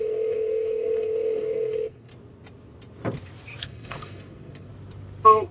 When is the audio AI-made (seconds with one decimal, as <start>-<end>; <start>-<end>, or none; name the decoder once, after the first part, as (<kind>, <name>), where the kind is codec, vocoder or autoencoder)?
0.0-2.1 (codec, SNAC); 3.6-4.7